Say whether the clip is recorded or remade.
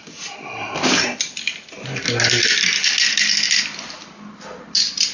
recorded